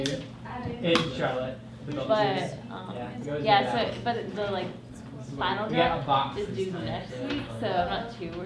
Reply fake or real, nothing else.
real